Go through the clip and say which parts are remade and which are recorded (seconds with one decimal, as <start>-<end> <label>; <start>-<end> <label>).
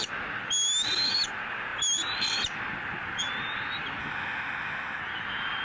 0.0-4.0 recorded; 4.0-5.0 remade; 5.0-5.6 recorded